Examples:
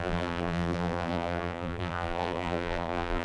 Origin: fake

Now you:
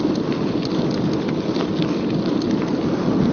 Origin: real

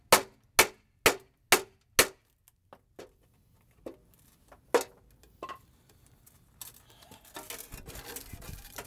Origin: real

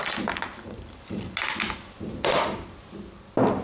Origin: real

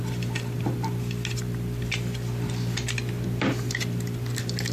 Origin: real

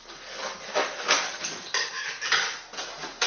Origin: real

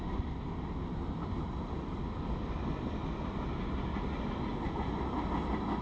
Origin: real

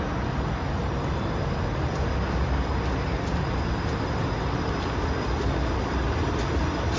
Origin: real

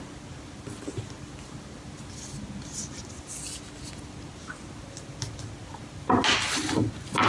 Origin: real